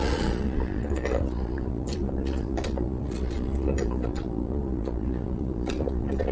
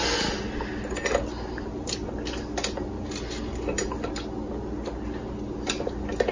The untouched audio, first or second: second